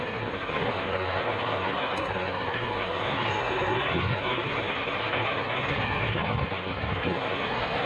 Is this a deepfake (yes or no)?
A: yes